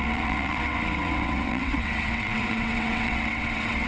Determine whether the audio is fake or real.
fake